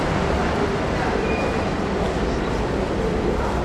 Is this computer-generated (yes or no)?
no